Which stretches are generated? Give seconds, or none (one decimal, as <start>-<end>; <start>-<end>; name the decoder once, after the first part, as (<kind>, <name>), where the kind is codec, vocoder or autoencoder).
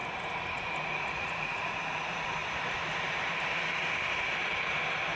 0.0-1.8 (vocoder, Vocos)